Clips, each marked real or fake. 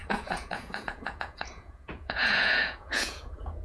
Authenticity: fake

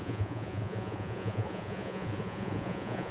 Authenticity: fake